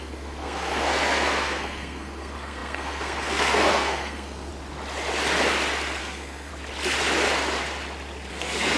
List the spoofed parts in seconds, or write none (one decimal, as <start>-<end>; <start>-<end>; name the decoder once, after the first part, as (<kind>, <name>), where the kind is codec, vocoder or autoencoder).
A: 0.0-4.5 (codec, SNAC); 6.0-6.5; 8.3-8.8